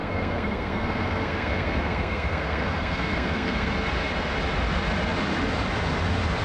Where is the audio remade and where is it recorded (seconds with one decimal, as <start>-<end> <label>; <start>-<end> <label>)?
0.0-3.7 remade; 3.7-6.4 recorded